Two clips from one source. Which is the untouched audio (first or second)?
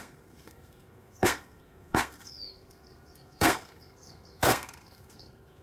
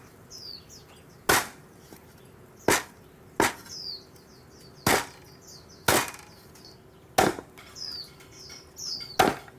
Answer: second